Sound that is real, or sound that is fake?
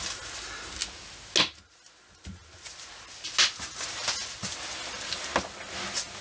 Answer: real